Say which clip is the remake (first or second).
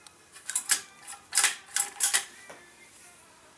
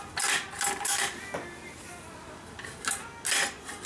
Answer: first